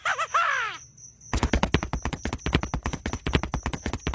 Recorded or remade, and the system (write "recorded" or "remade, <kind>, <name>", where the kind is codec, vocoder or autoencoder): recorded